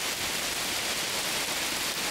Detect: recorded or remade recorded